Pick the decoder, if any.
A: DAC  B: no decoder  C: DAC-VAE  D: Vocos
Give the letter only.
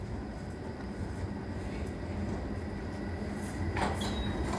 B